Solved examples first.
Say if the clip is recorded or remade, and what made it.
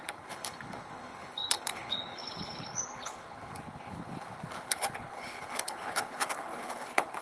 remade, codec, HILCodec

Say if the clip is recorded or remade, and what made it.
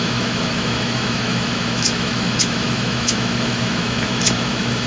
remade, autoencoder, DAC-VAE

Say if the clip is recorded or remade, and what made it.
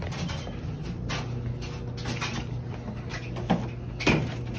recorded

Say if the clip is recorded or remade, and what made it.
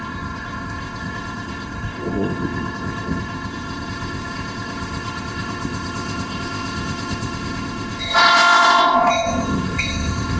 remade, codec, ZipCodec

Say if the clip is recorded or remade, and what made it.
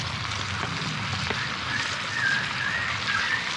recorded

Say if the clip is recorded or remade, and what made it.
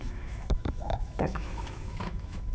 remade, autoencoder, DAC-VAE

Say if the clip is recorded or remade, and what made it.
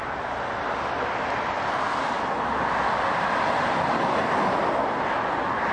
recorded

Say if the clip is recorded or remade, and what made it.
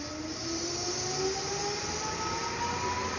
recorded